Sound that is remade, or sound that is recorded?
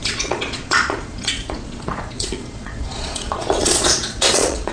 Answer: remade